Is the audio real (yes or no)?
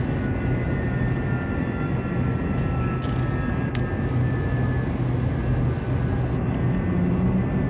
yes